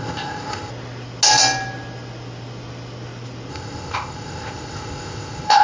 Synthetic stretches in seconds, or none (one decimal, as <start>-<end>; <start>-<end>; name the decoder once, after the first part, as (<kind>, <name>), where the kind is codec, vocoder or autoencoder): 0.0-0.7 (codec, ZipCodec); 3.5-5.6